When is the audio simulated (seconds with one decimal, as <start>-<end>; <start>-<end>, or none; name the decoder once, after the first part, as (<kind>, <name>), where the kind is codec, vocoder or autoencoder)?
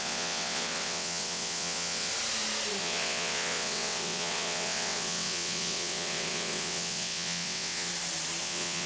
0.0-2.1 (vocoder, WaveNeXt); 2.8-7.9; 8.4-8.9